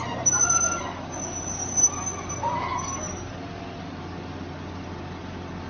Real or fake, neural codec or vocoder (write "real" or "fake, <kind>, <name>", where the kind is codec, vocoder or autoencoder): real